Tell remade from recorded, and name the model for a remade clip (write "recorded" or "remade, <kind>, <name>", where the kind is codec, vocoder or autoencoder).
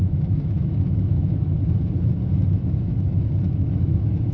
remade, autoencoder, DAC-VAE